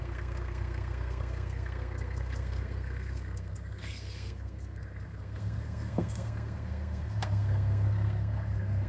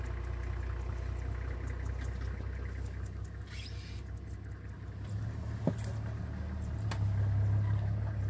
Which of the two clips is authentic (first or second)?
second